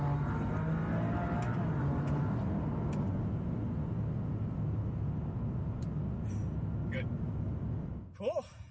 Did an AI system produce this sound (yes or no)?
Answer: no